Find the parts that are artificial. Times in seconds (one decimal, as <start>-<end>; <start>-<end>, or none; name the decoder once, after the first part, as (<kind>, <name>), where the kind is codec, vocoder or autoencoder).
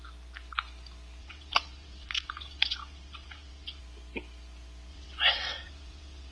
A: 1.2-3.8 (vocoder, WaveNeXt); 4.9-6.3